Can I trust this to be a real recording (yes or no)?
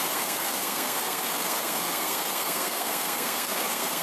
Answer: no